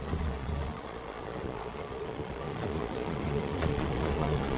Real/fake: fake